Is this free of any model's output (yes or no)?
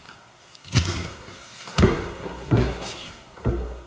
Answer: no